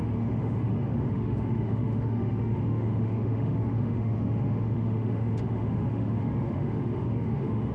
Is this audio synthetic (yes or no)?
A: yes